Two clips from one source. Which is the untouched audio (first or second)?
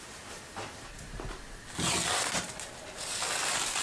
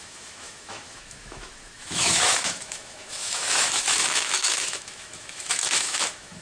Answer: first